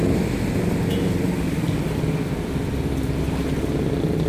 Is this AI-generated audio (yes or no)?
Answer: no